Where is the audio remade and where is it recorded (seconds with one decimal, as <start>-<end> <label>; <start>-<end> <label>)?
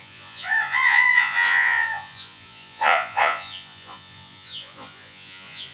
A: 0.0-5.7 remade